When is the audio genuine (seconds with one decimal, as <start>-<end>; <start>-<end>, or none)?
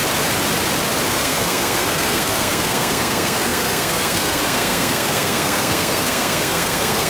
0.0-1.1